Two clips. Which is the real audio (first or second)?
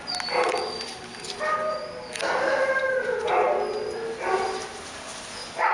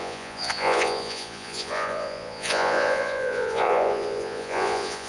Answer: first